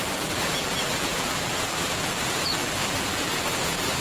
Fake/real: fake